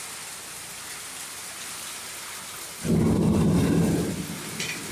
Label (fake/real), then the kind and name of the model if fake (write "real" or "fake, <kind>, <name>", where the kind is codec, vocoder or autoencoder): real